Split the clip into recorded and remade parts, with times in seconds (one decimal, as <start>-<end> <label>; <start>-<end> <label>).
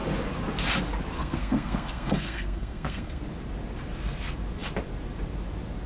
0.0-1.2 recorded; 1.2-3.2 remade; 3.2-5.9 recorded